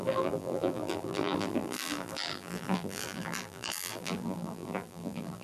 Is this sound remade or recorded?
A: remade